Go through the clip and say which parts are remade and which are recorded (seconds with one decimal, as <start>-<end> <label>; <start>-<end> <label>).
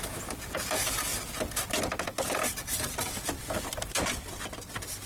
0.0-5.1 recorded